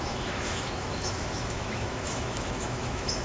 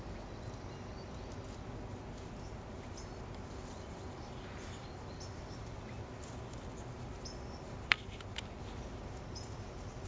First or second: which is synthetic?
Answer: first